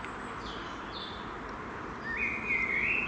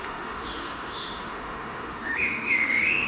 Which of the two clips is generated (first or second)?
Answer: second